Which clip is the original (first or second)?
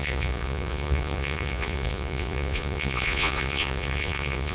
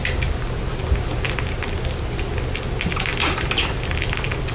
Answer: second